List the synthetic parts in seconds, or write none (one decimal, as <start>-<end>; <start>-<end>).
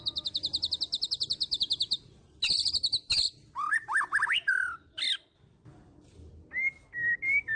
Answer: none